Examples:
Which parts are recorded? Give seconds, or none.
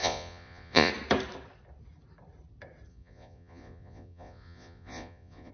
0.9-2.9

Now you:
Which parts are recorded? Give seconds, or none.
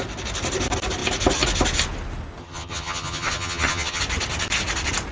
0.0-2.4; 4.0-5.1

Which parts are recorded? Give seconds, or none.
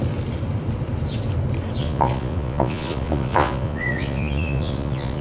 0.0-1.8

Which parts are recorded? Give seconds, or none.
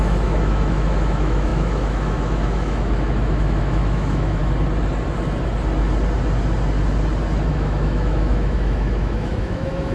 4.4-7.5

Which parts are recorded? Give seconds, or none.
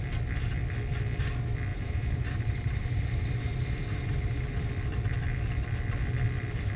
0.0-1.7; 4.7-6.8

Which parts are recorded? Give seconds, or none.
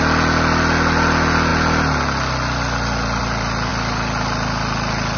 0.0-5.2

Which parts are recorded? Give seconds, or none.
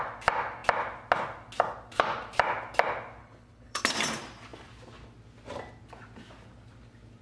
0.0-3.2; 3.8-7.2